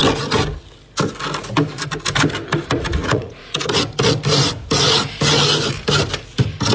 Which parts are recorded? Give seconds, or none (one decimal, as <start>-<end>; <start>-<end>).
0.0-3.0; 3.7-6.7